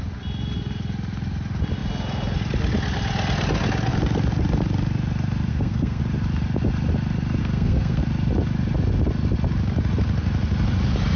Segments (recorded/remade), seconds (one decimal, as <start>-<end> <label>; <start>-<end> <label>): 0.0-5.5 recorded; 5.5-6.0 remade; 6.0-7.4 recorded; 7.4-8.0 remade; 8.0-11.2 recorded